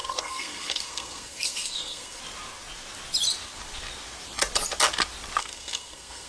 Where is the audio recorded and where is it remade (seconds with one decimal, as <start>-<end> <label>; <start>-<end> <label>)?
0.0-2.2 remade; 2.2-5.4 recorded; 5.4-6.3 remade